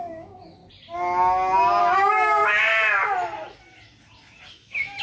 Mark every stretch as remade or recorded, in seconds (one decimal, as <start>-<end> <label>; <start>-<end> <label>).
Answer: 0.0-0.6 remade; 0.6-1.8 recorded; 1.8-2.4 remade; 2.4-4.5 recorded; 4.5-5.0 remade